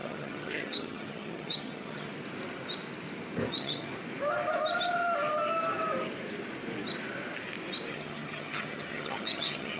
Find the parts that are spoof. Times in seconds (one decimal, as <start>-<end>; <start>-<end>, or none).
0.0-2.1; 3.5-3.9; 7.9-9.8